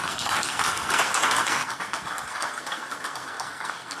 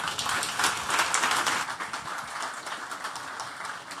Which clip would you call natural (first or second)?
second